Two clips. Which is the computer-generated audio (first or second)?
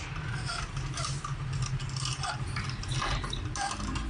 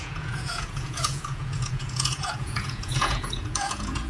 second